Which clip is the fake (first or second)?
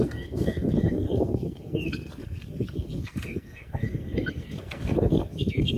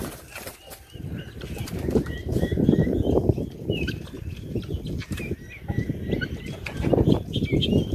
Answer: first